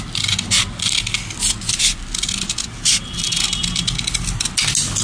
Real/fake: real